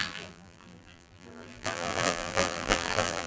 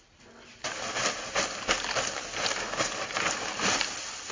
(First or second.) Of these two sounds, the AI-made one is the first